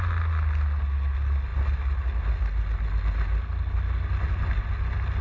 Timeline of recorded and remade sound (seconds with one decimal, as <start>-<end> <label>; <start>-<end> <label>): 0.0-5.2 recorded